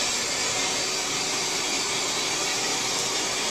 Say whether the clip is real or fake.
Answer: real